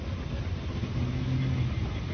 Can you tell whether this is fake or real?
real